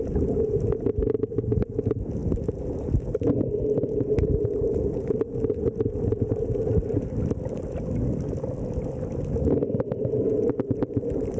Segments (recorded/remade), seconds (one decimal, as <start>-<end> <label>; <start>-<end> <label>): 0.0-11.4 recorded